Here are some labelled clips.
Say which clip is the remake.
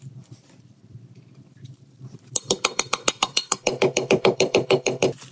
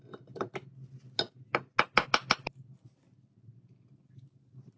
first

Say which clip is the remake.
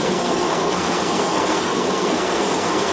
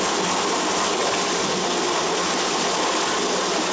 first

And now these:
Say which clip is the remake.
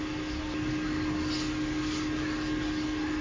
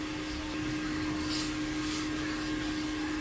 second